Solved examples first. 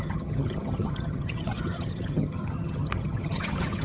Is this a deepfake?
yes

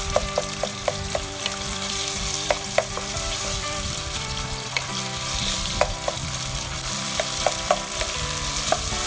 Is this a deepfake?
yes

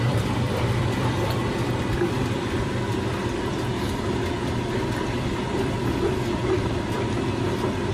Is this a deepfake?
yes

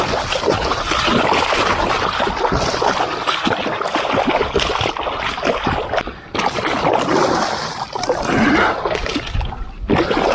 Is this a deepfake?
no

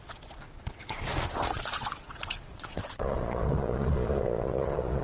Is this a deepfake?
yes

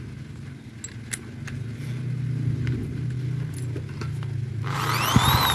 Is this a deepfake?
no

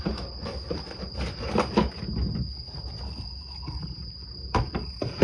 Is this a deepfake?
no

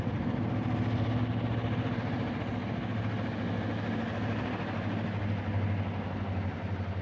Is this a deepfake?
no